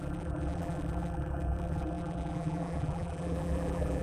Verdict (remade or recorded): remade